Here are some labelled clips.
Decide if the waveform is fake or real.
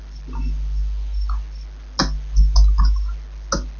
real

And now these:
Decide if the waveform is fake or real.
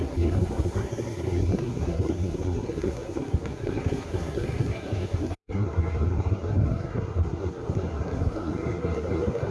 fake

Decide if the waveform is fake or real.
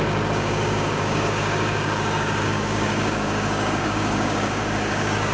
fake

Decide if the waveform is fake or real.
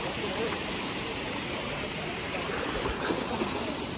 fake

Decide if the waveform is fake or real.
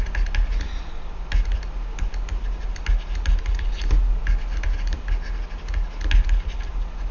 real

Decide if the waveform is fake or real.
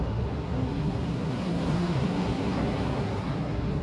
fake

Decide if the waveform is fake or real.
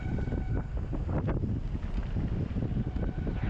real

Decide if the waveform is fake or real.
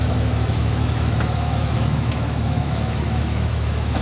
fake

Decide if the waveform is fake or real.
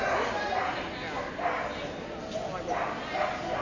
real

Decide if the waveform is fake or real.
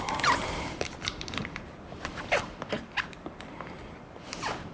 real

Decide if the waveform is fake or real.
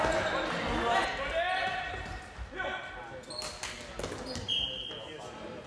real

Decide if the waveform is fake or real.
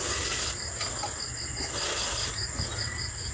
real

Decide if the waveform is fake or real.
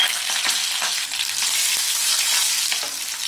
real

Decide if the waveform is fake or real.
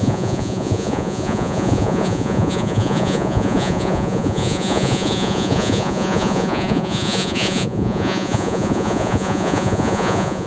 fake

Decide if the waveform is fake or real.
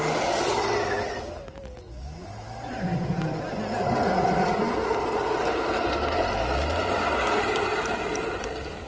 real